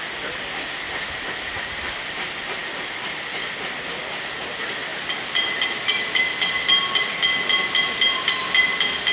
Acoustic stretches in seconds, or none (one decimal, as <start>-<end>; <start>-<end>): 0.0-9.1